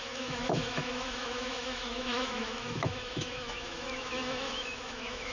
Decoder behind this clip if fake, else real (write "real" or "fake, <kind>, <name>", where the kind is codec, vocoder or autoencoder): fake, autoencoder, DAC-VAE